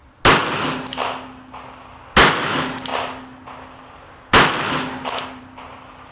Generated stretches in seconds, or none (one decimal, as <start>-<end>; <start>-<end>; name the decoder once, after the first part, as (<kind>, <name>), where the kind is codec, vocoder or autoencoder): none